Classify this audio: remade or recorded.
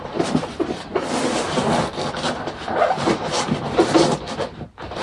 remade